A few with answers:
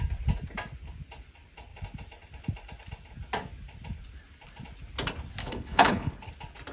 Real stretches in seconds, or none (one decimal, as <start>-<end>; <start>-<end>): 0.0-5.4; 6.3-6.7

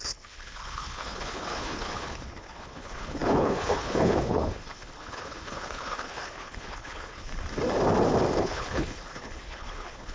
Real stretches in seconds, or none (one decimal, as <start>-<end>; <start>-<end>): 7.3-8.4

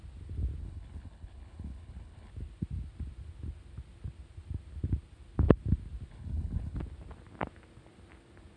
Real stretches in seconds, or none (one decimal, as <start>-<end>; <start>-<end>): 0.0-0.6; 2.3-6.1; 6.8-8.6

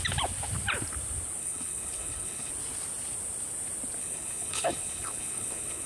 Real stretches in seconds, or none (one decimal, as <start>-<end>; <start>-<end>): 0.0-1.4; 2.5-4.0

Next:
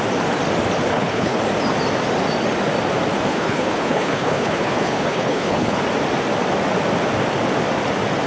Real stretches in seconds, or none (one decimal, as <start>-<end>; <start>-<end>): 0.0-0.9; 1.4-3.3; 5.8-8.3